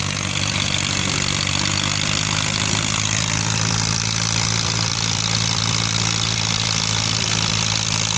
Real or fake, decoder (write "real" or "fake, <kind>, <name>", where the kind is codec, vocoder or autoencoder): fake, vocoder, BigVGAN v2